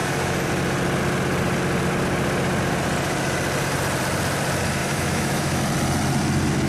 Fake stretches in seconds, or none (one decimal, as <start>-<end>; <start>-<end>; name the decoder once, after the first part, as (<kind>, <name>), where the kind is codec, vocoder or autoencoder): 0.0-0.5 (autoencoder, DAC-VAE); 4.8-5.6